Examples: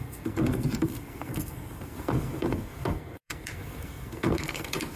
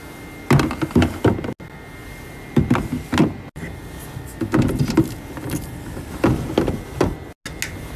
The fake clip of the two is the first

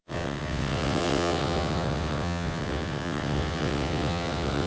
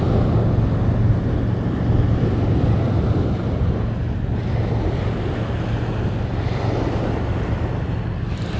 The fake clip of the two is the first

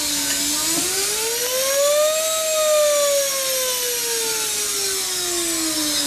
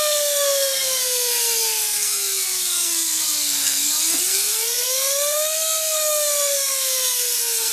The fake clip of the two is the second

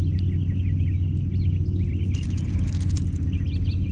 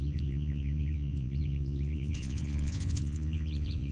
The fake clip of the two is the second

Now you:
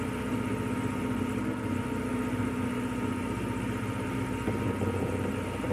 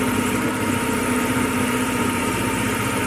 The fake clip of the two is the second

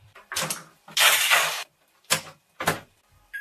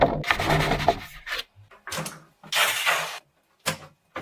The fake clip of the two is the first